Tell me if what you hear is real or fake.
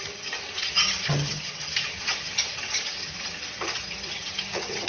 fake